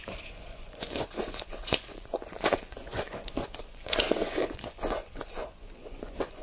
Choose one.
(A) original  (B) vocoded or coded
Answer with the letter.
B